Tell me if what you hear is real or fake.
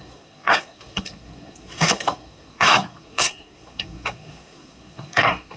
fake